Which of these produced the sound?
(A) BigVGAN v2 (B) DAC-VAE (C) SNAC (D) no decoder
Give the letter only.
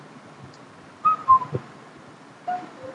D